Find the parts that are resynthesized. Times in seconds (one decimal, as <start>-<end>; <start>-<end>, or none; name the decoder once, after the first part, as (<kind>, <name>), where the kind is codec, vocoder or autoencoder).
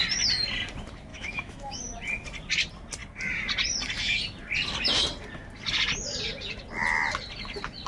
1.1-1.8 (autoencoder, DAC-VAE)